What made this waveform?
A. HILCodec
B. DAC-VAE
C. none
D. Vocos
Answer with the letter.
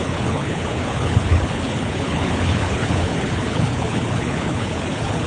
A